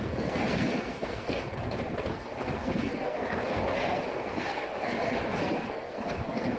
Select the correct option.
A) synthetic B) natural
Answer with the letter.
A